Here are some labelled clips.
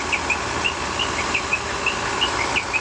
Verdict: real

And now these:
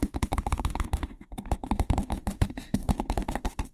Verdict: fake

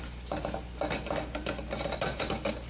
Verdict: real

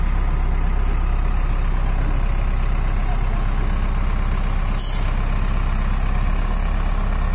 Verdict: real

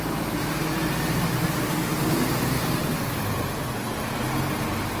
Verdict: real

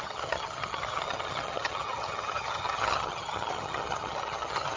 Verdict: fake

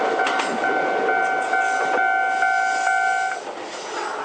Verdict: real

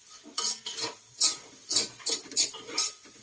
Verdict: real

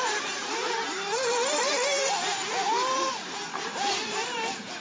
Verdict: fake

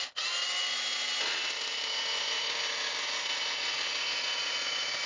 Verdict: real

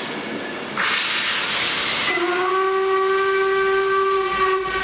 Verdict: real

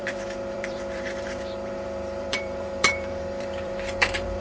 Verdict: fake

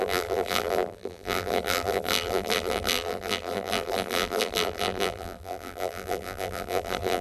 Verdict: fake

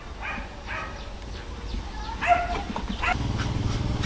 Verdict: real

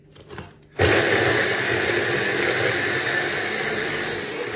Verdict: real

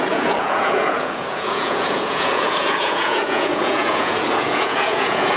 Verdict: fake